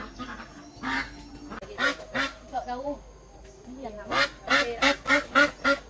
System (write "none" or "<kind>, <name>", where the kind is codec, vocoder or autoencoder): none